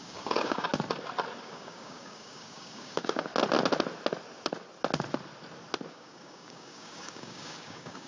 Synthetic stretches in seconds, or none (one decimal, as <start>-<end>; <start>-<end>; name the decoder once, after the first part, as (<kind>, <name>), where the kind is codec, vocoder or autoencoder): 0.0-0.7 (codec, DAC); 1.4-3.3; 5.9-8.1